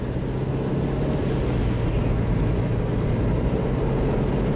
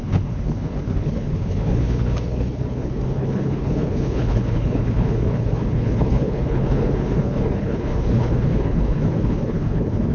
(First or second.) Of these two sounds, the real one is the first